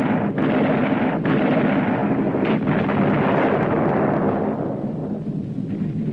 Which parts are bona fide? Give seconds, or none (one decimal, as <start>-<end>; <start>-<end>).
0.0-0.8; 1.6-5.0